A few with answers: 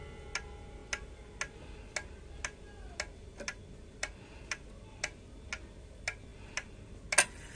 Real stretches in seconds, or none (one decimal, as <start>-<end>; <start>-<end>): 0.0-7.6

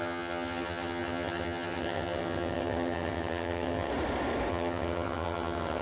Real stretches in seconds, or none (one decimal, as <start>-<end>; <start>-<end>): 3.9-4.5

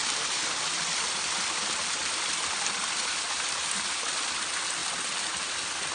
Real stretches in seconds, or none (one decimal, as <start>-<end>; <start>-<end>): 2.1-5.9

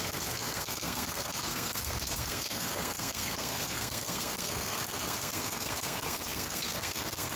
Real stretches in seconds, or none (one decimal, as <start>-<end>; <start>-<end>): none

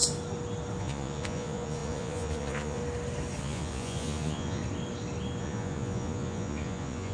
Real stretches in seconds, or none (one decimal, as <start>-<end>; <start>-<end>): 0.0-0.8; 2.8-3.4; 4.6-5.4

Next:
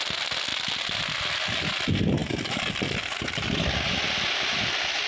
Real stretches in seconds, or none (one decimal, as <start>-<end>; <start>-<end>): 0.0-5.1